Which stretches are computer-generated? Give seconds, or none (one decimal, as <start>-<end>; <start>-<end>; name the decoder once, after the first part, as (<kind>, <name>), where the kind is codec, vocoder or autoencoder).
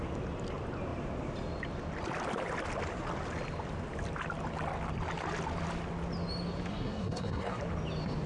6.7-7.6 (codec, SNAC)